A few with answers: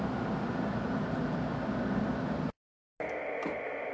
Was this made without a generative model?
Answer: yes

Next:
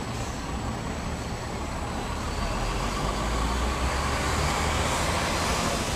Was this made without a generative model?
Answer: yes